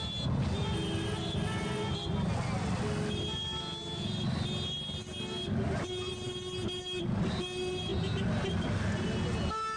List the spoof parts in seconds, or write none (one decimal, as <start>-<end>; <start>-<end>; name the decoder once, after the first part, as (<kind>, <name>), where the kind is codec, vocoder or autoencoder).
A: none